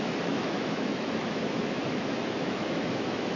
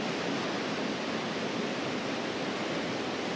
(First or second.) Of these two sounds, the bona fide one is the second